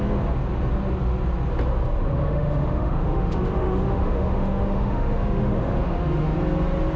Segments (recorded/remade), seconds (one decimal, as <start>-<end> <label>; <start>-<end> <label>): 0.0-2.2 recorded; 2.2-6.4 remade; 6.4-7.0 recorded